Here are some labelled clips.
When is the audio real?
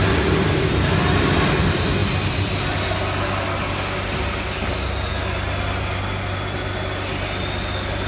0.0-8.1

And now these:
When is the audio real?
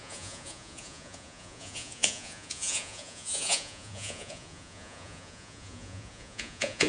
none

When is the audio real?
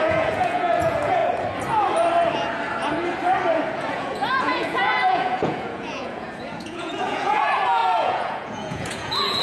1.2-3.9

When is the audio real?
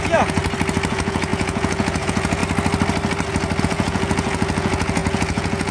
0.4-0.9; 2.4-3.6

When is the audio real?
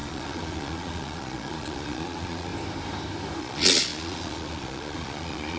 2.5-3.4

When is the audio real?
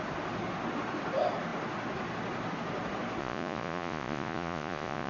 0.0-3.2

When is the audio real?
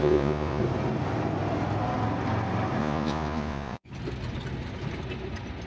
0.6-2.8; 3.9-5.7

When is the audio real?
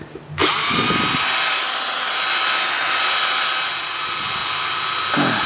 0.0-5.5